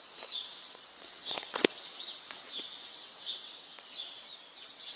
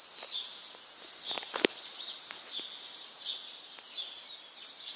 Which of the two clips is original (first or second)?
second